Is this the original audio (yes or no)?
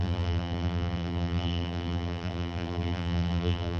no